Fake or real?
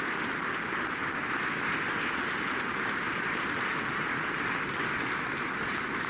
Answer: real